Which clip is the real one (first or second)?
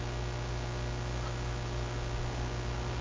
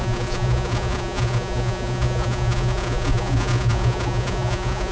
first